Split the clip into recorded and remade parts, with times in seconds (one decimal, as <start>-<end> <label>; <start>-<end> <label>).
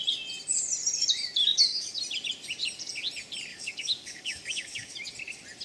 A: 0.0-1.5 recorded; 1.5-2.0 remade; 2.0-3.5 recorded; 3.5-4.9 remade; 4.9-5.6 recorded